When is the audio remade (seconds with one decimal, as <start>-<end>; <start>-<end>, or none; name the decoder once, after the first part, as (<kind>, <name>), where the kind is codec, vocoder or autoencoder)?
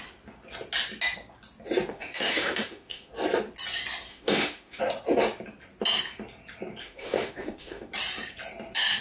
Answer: 1.9-3.1 (autoencoder, DAC-VAE); 4.1-4.8; 6.8-7.9